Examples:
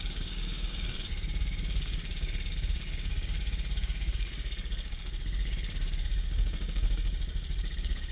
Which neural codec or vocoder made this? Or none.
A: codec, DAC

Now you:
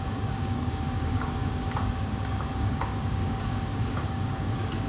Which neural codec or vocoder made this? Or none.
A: codec, DAC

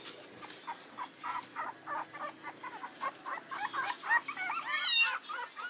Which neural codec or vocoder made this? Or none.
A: none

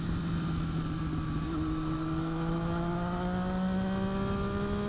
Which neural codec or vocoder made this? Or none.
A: none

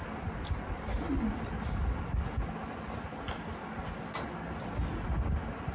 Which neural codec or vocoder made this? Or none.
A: none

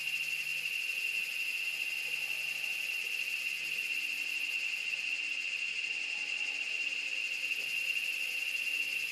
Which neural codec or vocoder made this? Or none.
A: none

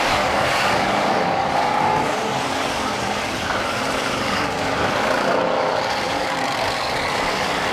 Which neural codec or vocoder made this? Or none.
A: codec, DAC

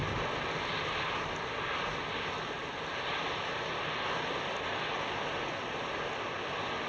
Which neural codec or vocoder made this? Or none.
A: none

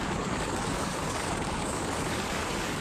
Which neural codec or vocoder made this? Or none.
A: codec, DAC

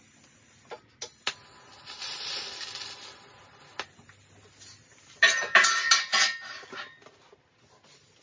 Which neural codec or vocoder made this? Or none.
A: none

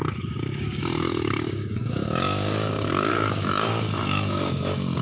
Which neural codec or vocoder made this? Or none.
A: codec, DAC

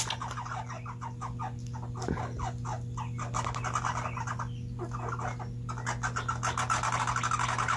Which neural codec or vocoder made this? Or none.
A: none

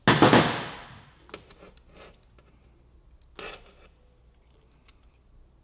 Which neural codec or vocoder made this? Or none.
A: none